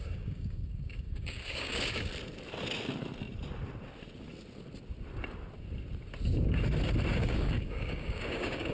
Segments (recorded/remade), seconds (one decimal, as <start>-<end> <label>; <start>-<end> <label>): 0.0-2.1 remade; 2.1-7.1 recorded; 7.1-8.7 remade